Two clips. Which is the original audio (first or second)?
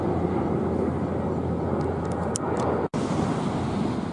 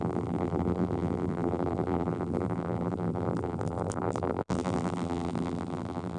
first